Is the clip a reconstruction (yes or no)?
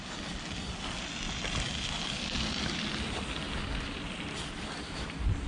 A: no